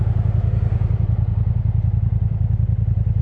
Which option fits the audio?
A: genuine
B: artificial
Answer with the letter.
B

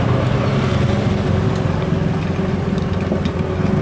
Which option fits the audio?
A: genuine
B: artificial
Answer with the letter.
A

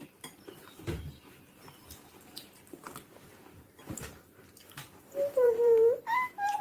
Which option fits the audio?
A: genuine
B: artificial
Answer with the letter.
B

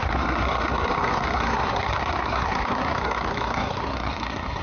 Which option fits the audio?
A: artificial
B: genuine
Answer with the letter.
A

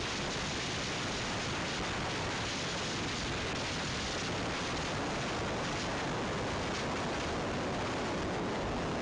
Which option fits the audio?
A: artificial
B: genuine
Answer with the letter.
B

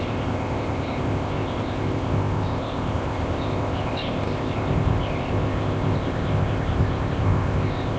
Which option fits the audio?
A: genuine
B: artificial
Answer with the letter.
B